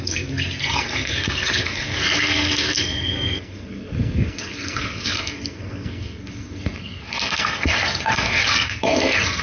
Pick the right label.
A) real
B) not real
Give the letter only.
B